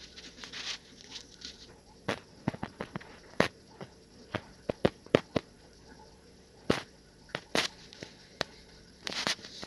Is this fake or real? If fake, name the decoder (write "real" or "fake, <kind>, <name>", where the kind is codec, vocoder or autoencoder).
fake, vocoder, Vocos